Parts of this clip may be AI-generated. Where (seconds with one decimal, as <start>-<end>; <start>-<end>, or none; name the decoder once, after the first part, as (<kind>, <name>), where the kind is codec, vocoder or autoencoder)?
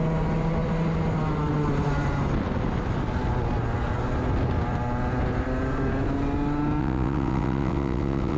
6.8-8.4 (vocoder, WaveNeXt)